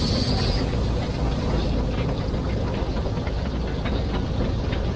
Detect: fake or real real